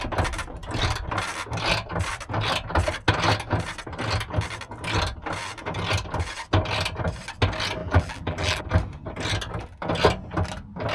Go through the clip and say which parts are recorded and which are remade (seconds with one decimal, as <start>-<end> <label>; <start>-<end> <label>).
0.0-7.8 recorded; 7.8-8.6 remade; 8.6-10.9 recorded